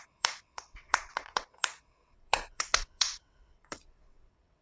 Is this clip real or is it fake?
fake